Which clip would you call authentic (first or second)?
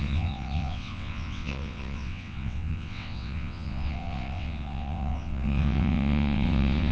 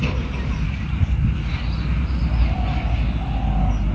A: second